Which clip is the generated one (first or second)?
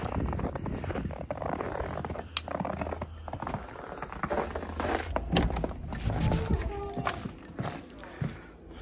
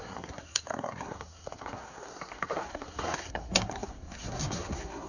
second